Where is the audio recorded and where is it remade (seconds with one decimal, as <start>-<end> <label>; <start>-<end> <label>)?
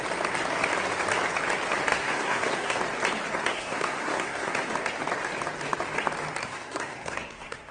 0.0-1.9 recorded; 1.9-2.8 remade; 2.8-3.4 recorded; 3.4-4.7 remade; 4.7-6.4 recorded; 6.4-7.7 remade